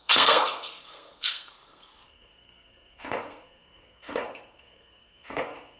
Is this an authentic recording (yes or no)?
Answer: no